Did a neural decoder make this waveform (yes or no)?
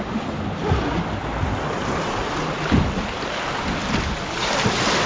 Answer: no